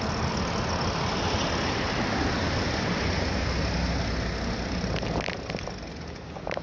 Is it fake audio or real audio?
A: real